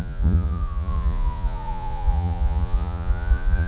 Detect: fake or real fake